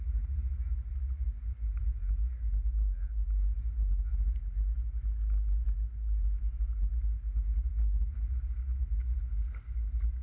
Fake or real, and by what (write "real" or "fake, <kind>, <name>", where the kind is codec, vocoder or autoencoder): real